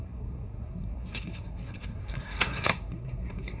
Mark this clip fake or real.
fake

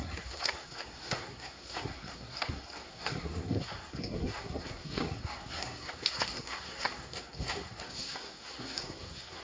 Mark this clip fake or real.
fake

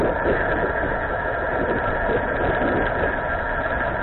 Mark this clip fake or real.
real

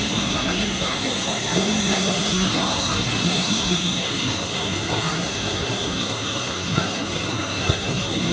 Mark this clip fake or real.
fake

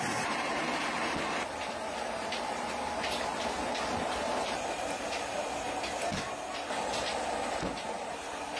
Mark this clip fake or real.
real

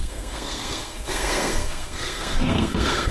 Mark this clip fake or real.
fake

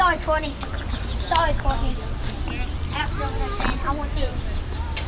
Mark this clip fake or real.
real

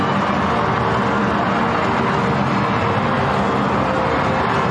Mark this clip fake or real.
real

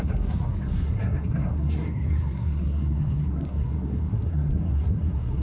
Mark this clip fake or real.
fake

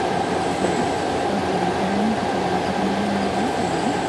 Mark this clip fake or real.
real